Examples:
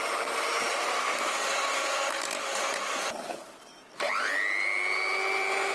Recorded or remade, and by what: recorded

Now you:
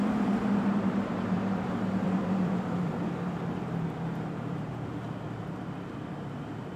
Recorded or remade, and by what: remade, vocoder, BigVGAN v2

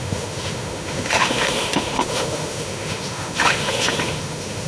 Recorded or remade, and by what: remade, autoencoder, DAC-VAE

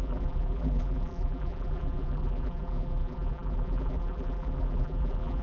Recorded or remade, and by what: remade, vocoder, BigVGAN v2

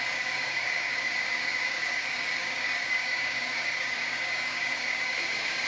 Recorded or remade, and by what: remade, codec, DAC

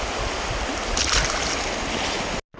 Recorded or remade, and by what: recorded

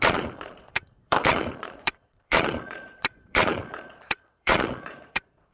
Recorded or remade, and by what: remade, vocoder, Vocos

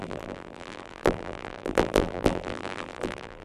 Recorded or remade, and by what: remade, vocoder, BigVGAN v2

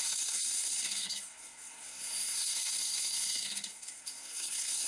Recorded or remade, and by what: remade, codec, SNAC